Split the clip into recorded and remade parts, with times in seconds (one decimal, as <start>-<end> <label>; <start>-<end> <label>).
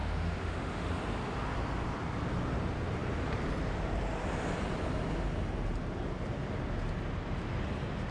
0.0-0.9 remade; 0.9-8.1 recorded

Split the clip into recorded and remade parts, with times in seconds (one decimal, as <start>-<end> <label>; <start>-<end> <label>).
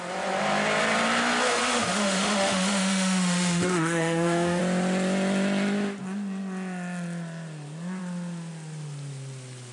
0.0-1.6 recorded; 1.6-4.6 remade; 4.6-9.7 recorded